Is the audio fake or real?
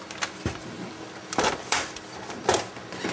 real